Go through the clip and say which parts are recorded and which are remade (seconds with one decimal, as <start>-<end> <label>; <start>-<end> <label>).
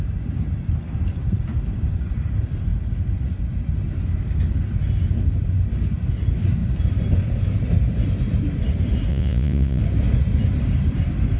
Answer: 0.0-9.1 recorded; 9.1-9.8 remade; 9.8-11.4 recorded